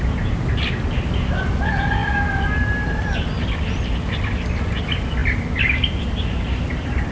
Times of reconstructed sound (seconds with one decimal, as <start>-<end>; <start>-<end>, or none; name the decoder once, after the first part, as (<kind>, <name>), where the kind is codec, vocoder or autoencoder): none